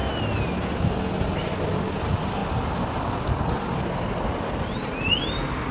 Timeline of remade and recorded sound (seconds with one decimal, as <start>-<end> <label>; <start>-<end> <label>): 0.0-5.7 recorded

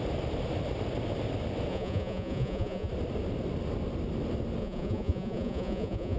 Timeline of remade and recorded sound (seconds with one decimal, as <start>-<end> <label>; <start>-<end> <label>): 0.0-1.7 recorded; 1.7-2.9 remade; 2.9-4.6 recorded; 4.6-6.2 remade